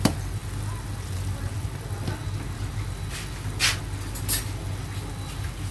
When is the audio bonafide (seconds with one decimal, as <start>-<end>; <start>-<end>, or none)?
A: 0.0-5.7